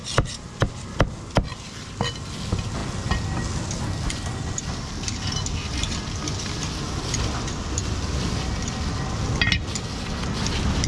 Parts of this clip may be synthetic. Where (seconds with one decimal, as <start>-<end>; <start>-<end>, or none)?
none